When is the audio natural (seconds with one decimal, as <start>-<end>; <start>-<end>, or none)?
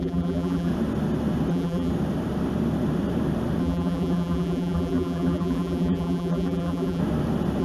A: 0.7-1.5; 1.9-3.6; 7.0-7.6